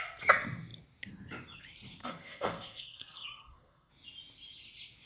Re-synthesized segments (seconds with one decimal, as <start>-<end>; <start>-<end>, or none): 2.0-3.9